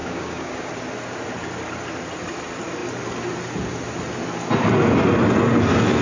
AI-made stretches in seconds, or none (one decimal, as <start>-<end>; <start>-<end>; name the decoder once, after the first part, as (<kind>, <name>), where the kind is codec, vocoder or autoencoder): 0.0-0.7 (codec, DAC)